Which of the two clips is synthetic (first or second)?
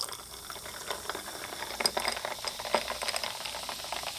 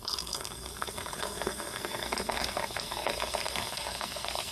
second